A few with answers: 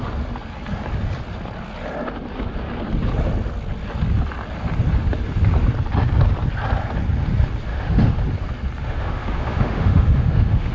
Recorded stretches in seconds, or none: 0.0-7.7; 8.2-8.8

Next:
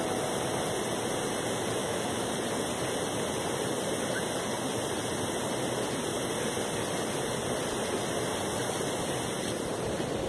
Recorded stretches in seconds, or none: 0.0-1.8; 2.3-10.3

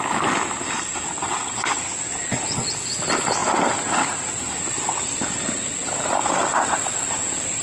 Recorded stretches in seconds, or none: 0.0-7.6